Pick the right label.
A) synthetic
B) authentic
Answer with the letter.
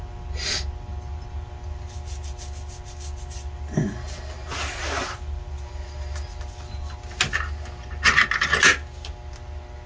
B